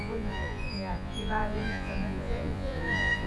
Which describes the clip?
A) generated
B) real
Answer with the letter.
A